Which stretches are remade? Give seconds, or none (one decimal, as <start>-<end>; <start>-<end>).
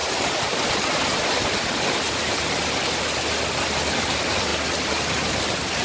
none